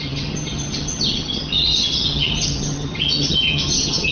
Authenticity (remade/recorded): remade